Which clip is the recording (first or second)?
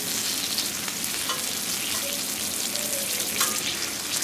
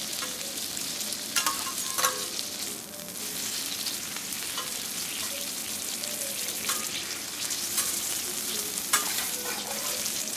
first